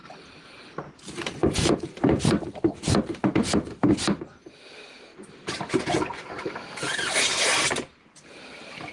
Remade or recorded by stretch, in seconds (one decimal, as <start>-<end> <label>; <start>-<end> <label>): 0.0-3.9 remade; 3.9-5.1 recorded; 5.1-6.5 remade; 6.5-8.9 recorded